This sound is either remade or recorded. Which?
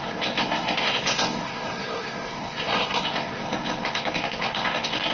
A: remade